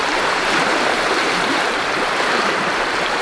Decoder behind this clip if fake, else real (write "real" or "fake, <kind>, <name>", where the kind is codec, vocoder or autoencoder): fake, vocoder, BigVGAN v2